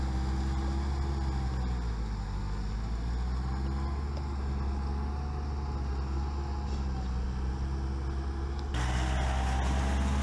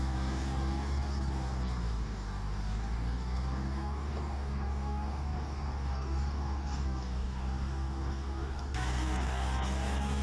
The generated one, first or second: second